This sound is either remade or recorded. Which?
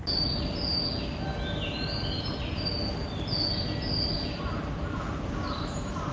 recorded